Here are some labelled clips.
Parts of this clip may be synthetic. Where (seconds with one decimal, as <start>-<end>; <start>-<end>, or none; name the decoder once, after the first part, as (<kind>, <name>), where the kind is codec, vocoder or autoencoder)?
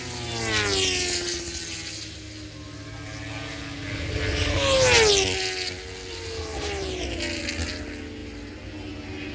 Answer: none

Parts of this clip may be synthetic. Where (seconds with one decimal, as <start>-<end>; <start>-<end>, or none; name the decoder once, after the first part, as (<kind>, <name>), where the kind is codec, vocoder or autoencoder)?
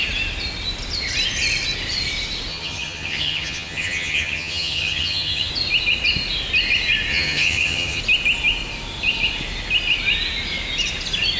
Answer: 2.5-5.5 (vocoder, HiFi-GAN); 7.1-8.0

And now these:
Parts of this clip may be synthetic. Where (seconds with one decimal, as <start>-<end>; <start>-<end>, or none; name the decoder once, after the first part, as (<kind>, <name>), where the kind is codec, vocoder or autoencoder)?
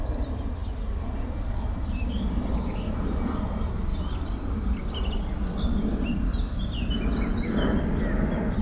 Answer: none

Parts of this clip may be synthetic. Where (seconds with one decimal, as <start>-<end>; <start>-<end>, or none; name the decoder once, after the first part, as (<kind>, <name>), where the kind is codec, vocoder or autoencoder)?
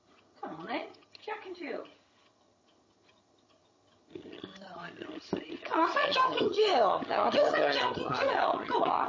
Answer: 0.0-9.1 (vocoder, HiFi-GAN)